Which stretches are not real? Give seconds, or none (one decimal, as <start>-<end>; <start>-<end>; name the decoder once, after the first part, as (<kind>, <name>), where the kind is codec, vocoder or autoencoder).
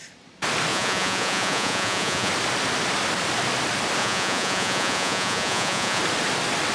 0.7-2.3 (vocoder, Vocos); 4.0-6.0